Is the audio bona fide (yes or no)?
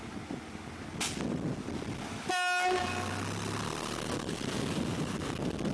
yes